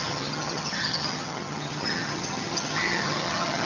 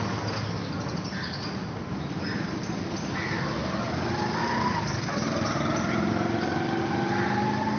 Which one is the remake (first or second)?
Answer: first